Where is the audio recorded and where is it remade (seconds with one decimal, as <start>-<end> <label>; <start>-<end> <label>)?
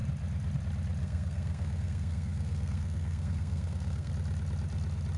0.0-1.0 recorded; 1.0-4.1 remade; 4.1-5.2 recorded